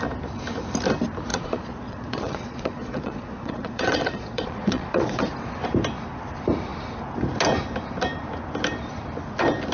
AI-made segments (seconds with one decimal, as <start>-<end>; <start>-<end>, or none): 1.3-5.2